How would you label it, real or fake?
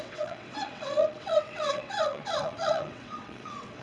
fake